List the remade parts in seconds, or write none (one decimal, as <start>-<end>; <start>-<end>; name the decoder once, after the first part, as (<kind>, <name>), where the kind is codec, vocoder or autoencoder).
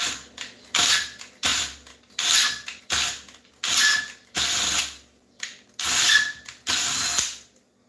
none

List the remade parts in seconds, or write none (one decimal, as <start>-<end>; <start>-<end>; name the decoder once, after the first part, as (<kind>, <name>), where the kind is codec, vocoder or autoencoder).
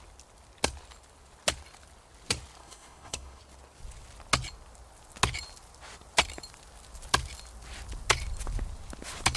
2.6-3.4 (codec, SNAC)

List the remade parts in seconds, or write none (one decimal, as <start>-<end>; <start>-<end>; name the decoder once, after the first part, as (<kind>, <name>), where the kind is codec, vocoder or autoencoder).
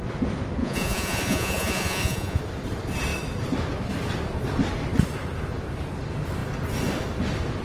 0.6-2.4 (vocoder, Vocos)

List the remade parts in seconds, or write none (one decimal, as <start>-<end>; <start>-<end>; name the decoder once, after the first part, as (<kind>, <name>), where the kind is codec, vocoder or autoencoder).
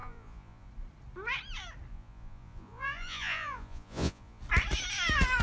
0.0-0.7 (vocoder, Vocos); 1.9-4.4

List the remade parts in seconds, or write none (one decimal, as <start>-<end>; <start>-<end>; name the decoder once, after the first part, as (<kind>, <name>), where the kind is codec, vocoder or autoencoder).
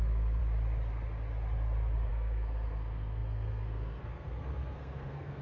0.0-0.4 (codec, SNAC); 2.1-5.4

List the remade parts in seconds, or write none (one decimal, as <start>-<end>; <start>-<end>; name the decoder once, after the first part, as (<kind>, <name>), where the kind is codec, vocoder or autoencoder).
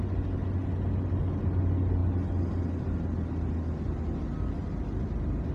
none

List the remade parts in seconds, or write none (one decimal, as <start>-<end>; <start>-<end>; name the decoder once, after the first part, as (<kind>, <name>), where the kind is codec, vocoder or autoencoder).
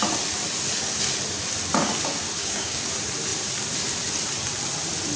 2.4-2.9 (codec, DAC)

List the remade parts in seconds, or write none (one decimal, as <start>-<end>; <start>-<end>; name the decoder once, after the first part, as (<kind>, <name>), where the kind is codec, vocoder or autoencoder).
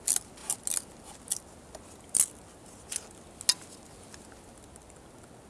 none